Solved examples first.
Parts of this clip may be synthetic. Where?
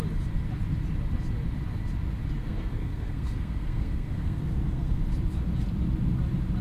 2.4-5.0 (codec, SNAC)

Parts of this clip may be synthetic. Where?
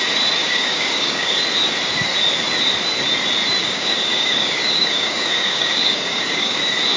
0.4-1.3 (codec, DAC); 3.6-6.6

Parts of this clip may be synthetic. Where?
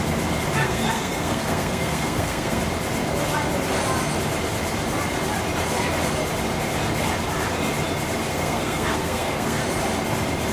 0.6-2.6 (codec, SNAC); 8.3-9.6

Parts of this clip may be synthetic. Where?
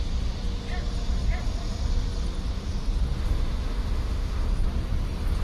3.2-4.5 (autoencoder, DAC-VAE)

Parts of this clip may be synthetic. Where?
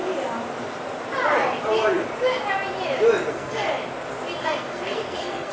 3.3-3.7 (codec, SNAC); 4.4-5.5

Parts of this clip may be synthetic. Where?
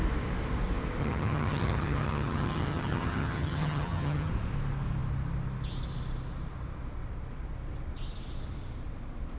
1.0-4.3 (vocoder, HiFi-GAN)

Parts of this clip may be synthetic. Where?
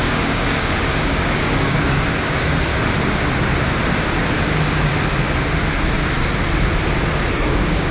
0.0-2.7 (codec, DAC); 7.3-7.9